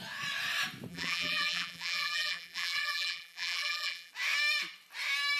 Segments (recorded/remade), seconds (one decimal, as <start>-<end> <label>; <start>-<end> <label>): 0.0-0.9 recorded; 0.9-4.1 remade; 4.1-5.4 recorded